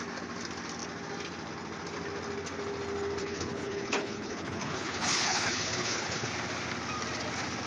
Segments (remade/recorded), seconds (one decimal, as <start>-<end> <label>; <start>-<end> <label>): 0.0-3.2 recorded; 3.2-6.3 remade; 6.3-7.7 recorded